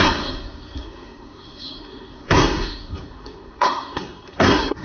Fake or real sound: fake